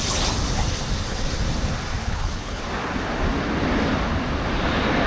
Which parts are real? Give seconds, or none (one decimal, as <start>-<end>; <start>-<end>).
0.0-2.0; 2.6-5.1